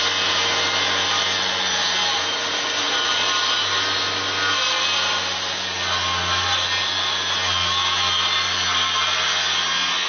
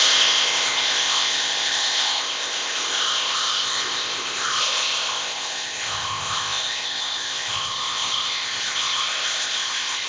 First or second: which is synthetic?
second